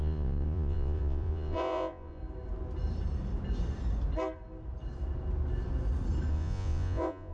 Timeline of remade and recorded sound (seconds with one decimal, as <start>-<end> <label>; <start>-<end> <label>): 0.0-2.2 remade; 2.2-6.3 recorded; 6.3-7.3 remade